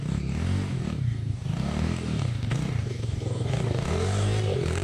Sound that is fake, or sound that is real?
fake